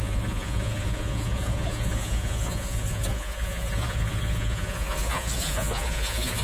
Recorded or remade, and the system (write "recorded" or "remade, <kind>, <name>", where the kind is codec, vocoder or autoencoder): remade, vocoder, Vocos